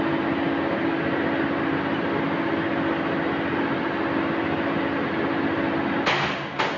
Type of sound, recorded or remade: recorded